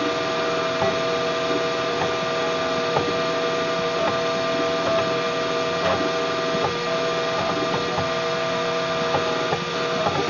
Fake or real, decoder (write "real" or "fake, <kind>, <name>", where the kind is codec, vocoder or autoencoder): real